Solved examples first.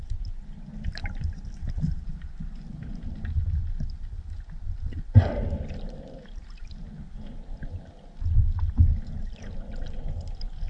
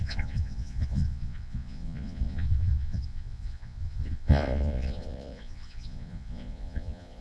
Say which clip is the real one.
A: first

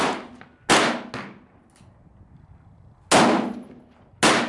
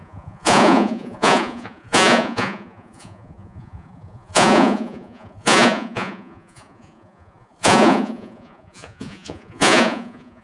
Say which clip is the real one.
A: first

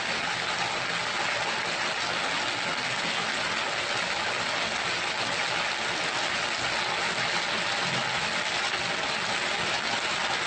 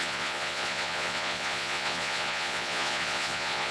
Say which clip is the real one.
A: first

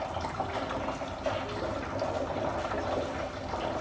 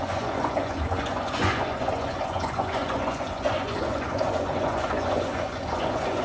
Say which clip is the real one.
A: first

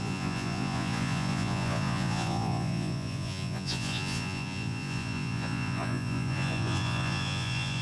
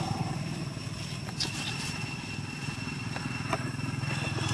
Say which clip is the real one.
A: second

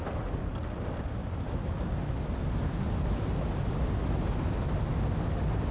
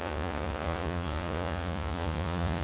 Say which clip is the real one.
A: first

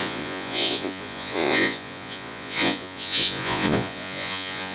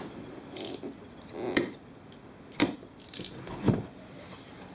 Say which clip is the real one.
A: second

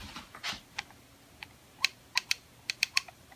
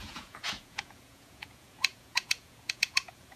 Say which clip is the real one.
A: first